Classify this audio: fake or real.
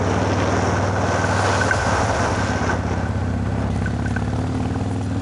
real